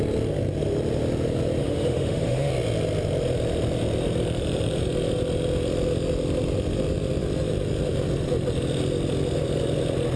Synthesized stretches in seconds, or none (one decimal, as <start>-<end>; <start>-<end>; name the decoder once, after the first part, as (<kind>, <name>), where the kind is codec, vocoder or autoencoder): 1.6-2.5 (autoencoder, DAC-VAE)